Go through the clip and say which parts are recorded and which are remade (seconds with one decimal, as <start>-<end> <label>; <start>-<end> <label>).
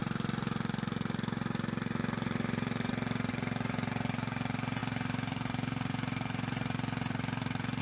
0.0-2.9 remade; 2.9-3.3 recorded; 3.3-3.9 remade; 3.9-4.8 recorded; 4.8-7.8 remade